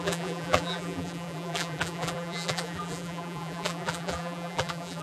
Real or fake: fake